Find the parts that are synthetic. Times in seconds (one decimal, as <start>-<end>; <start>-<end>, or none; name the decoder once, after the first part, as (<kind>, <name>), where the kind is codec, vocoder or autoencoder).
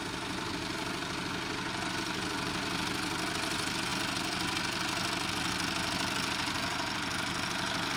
none